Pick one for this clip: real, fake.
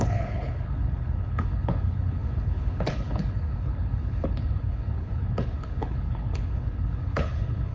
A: fake